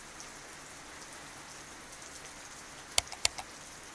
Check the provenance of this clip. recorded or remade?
recorded